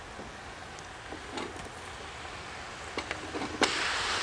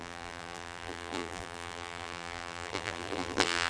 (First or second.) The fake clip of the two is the second